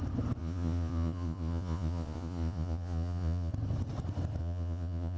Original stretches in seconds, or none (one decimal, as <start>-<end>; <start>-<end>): 0.0-0.4; 3.5-4.4